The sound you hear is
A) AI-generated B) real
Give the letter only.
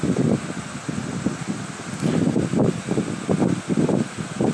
B